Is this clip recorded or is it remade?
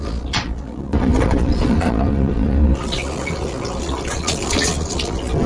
remade